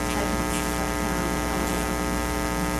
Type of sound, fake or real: real